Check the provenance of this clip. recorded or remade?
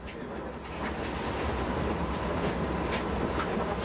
recorded